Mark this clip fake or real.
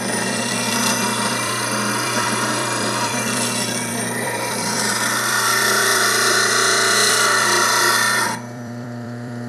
fake